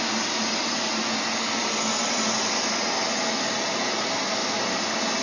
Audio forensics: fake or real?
real